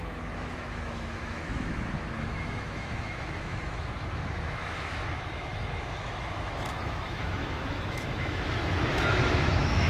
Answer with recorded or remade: remade